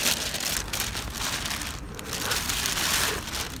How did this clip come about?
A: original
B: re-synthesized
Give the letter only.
B